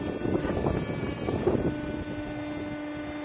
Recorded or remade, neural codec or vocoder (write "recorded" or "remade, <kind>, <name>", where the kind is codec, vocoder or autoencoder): recorded